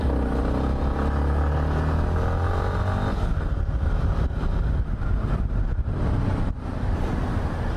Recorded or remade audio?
recorded